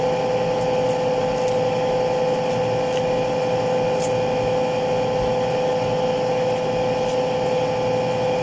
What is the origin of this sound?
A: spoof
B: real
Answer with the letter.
B